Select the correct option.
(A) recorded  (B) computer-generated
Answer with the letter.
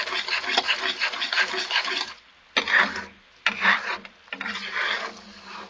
A